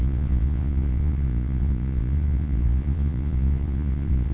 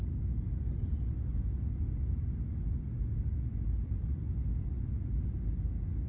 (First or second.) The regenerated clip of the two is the first